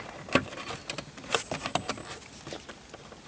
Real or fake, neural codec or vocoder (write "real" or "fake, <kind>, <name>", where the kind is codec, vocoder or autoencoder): real